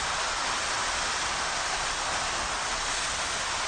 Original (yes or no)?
yes